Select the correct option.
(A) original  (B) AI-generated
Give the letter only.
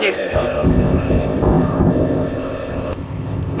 B